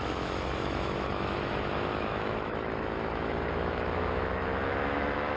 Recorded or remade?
remade